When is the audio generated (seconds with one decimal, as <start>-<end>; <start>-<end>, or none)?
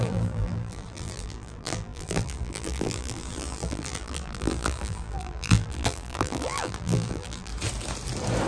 0.0-7.5